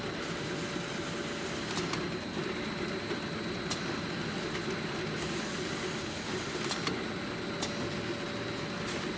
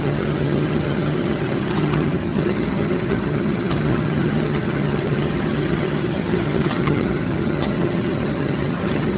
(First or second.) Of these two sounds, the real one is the first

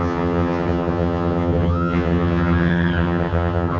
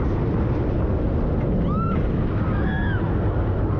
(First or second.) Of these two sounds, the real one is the second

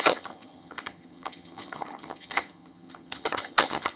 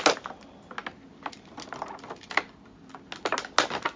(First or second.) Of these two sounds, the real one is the second